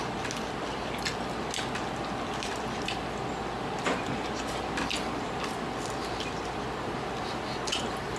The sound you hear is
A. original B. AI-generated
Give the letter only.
A